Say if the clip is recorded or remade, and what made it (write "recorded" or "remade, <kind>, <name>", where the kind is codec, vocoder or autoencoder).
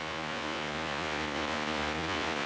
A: remade, vocoder, Vocos